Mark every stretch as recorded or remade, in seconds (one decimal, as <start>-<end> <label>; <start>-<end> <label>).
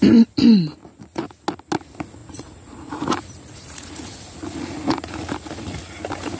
0.0-0.8 recorded; 0.8-1.4 remade; 1.4-2.2 recorded; 2.2-6.0 remade; 6.0-6.4 recorded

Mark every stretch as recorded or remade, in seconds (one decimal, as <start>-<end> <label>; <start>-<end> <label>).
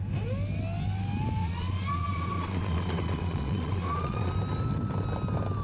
0.0-1.4 recorded; 1.4-4.3 remade; 4.3-5.6 recorded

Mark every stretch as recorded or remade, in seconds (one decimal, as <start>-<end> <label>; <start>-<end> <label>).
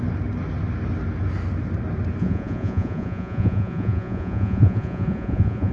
0.0-2.2 recorded; 2.2-5.7 remade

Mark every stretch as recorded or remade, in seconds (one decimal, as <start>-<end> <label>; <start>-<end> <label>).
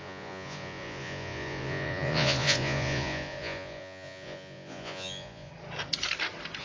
0.0-5.5 remade; 5.5-6.6 recorded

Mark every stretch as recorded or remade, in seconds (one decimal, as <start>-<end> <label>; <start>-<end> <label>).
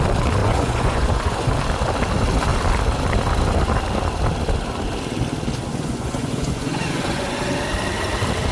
0.0-0.4 recorded; 0.4-1.5 remade; 1.5-5.7 recorded; 5.7-7.4 remade; 7.4-8.5 recorded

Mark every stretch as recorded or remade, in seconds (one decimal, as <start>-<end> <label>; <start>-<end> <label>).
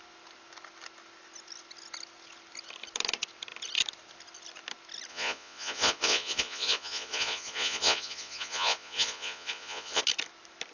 0.0-5.1 recorded; 5.1-10.0 remade; 10.0-10.7 recorded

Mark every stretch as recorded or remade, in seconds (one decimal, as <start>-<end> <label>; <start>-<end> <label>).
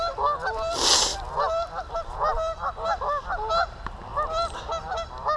0.0-5.4 recorded